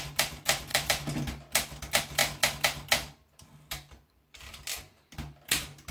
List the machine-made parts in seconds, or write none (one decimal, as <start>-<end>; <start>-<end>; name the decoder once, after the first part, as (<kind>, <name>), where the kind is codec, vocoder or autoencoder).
0.0-0.7 (vocoder, BigVGAN v2); 1.8-2.2; 3.4-5.9